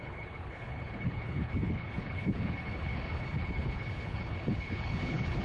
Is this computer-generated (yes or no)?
yes